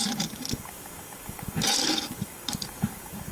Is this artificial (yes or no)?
yes